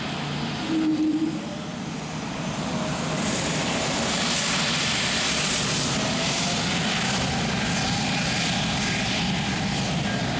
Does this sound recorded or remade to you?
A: recorded